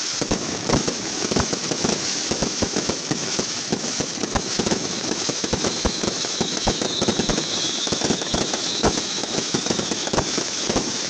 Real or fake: fake